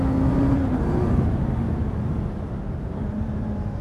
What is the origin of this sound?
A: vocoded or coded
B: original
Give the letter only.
A